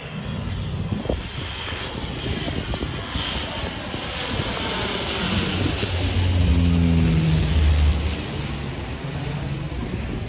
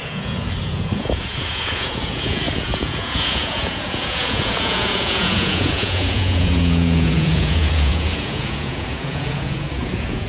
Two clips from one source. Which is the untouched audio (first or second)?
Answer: first